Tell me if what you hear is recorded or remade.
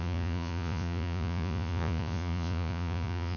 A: remade